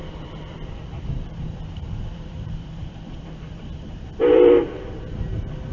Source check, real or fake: fake